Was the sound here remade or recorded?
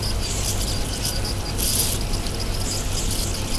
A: recorded